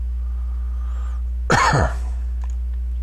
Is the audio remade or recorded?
recorded